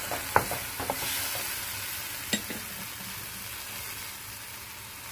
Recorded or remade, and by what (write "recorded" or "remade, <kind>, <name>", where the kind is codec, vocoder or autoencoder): recorded